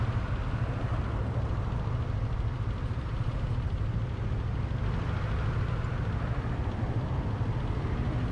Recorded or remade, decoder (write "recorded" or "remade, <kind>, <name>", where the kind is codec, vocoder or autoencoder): recorded